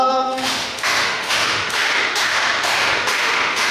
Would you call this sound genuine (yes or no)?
no